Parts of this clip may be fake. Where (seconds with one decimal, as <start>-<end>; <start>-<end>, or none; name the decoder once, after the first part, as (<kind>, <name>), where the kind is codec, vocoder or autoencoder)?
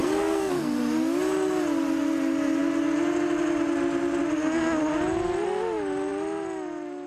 0.0-0.8 (codec, SNAC)